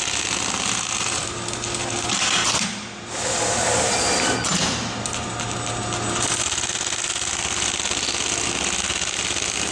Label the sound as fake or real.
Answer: real